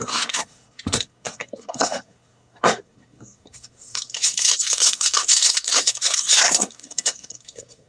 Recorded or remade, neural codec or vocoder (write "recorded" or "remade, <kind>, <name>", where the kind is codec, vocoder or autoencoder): remade, codec, SNAC